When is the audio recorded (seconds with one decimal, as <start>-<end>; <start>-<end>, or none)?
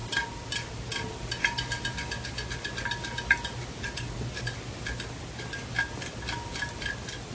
0.0-7.3